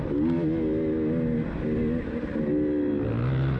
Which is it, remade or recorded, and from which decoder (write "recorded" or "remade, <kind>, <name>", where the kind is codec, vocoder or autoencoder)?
recorded